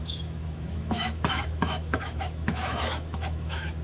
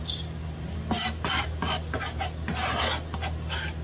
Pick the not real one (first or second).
first